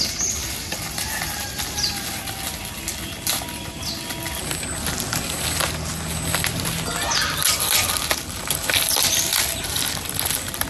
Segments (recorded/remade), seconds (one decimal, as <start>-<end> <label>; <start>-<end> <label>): 0.0-10.7 recorded